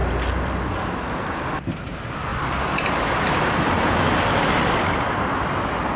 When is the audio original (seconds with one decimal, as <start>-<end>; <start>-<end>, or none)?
0.0-6.0